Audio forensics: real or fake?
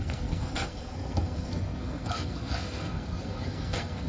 fake